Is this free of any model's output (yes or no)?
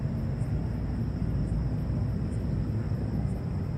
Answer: yes